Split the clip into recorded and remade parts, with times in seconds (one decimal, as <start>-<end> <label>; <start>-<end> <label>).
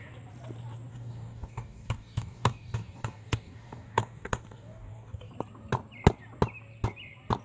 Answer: 0.0-0.9 recorded; 0.9-5.3 remade; 5.3-7.4 recorded